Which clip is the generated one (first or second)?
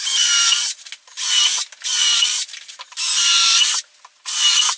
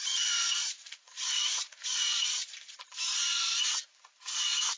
second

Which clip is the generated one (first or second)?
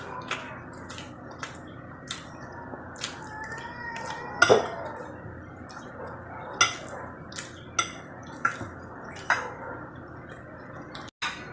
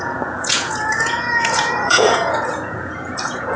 second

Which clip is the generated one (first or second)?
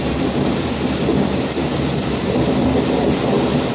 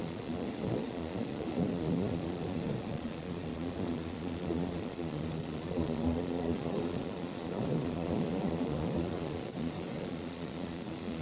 second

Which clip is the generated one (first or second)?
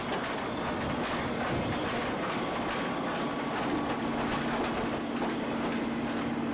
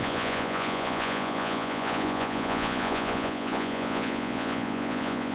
second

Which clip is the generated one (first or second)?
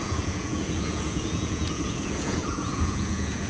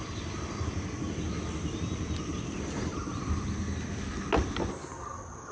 first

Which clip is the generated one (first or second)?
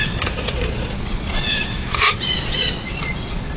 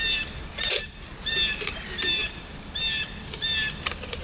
first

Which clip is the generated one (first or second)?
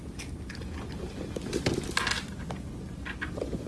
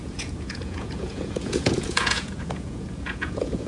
second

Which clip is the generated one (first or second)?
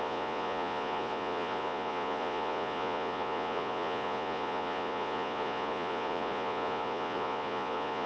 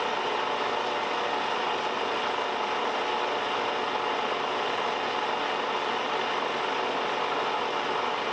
first